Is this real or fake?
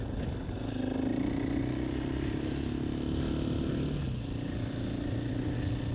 real